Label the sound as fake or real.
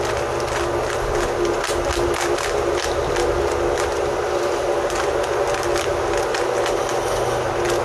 real